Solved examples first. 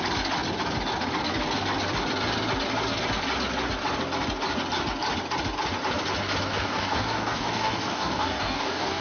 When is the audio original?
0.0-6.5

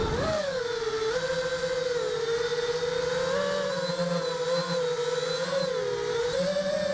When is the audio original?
0.6-6.9

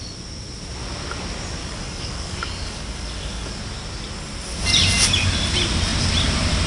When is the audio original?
0.0-1.6; 3.6-6.7

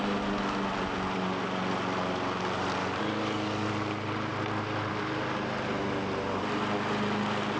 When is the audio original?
0.0-2.8; 3.7-7.6

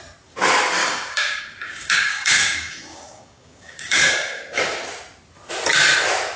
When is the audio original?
0.0-0.8; 4.6-6.4